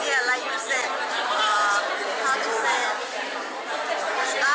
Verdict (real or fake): real